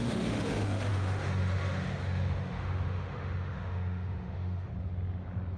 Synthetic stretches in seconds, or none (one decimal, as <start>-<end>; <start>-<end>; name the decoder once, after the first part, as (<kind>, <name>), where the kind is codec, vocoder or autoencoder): 0.0-4.7 (autoencoder, DAC-VAE)